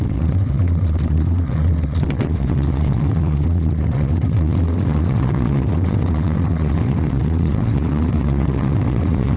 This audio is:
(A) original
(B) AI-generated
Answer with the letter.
B